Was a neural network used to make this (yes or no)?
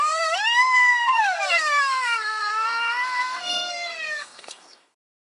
yes